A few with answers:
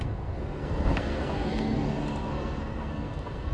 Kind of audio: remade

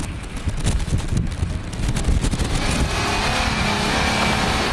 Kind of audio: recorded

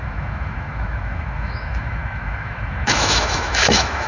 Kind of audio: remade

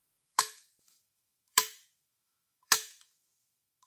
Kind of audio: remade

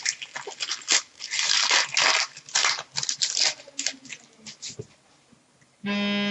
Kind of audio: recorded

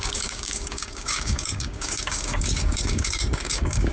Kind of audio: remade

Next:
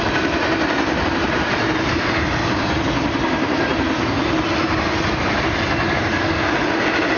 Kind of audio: recorded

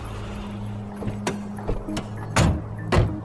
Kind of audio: recorded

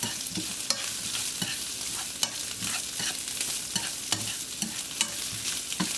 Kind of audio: recorded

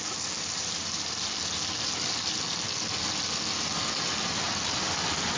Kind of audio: recorded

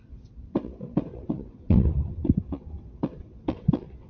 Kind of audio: remade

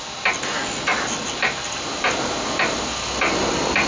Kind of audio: recorded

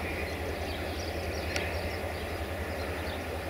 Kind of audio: recorded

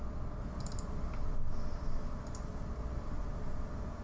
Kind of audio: recorded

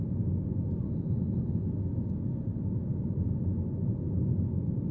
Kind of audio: recorded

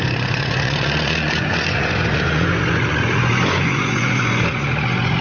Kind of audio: remade